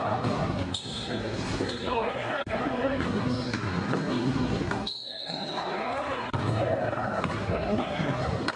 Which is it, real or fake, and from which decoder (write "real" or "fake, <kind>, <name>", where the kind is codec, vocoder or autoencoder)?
fake, codec, SNAC